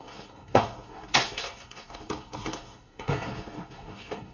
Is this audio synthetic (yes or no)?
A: yes